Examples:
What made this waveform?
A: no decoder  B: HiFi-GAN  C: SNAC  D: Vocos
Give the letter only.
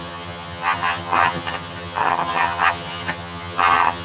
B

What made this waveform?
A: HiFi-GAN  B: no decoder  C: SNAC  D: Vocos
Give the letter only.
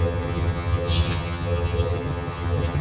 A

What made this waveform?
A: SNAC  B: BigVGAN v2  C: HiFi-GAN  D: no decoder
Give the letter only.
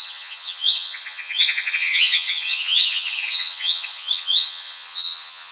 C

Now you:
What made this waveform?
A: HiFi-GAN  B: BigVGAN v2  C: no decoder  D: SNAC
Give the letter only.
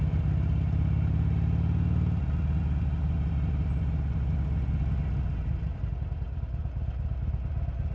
C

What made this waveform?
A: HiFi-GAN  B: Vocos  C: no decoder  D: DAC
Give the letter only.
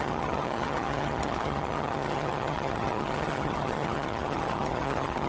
A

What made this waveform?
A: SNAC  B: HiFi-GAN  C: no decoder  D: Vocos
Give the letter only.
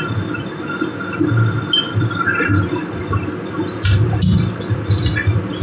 C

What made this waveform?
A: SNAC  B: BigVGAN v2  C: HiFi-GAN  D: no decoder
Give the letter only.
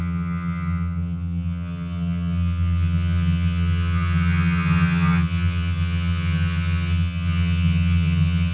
C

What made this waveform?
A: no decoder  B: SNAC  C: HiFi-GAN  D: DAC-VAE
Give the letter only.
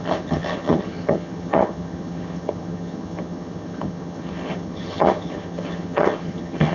C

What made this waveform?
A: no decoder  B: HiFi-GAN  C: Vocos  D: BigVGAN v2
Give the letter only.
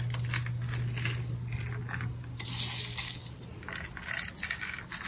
A